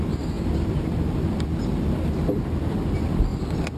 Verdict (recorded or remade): recorded